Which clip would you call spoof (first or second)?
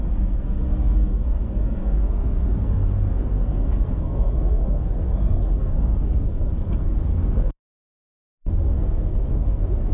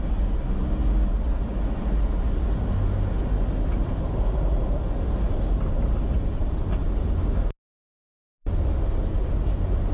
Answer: first